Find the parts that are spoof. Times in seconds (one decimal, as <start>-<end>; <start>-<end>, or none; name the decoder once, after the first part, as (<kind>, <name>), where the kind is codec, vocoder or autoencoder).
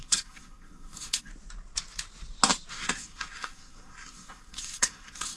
0.0-1.3 (codec, SNAC); 2.7-5.4